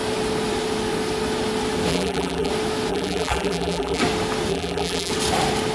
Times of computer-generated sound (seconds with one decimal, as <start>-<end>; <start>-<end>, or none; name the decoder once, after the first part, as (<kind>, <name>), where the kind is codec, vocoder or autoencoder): 1.9-2.5 (vocoder, BigVGAN v2); 2.9-4.0; 4.5-5.1